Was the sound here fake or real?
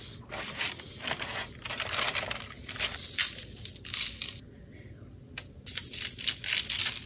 real